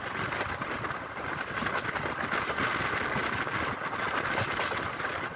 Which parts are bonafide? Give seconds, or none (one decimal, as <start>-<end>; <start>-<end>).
0.0-5.4